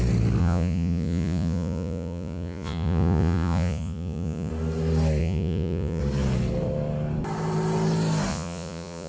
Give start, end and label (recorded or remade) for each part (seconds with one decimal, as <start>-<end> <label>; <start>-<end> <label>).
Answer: 0.0-0.4 recorded; 0.4-4.5 remade; 4.5-5.2 recorded; 5.2-6.0 remade; 6.0-8.3 recorded; 8.3-9.1 remade